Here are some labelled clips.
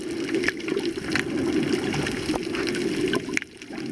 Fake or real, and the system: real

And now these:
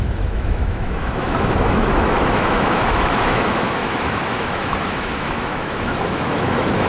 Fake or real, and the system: fake, autoencoder, DAC-VAE